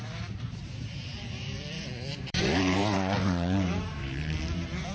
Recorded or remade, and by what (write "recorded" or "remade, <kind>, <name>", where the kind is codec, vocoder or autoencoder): remade, vocoder, BigVGAN v2